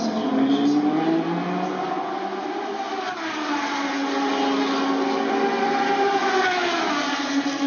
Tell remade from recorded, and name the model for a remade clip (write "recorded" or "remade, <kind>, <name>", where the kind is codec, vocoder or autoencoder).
recorded